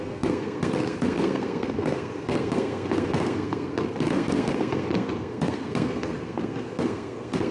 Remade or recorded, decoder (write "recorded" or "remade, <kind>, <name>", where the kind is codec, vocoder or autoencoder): remade, codec, SNAC